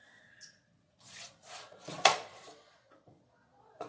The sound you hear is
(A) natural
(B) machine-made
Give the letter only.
B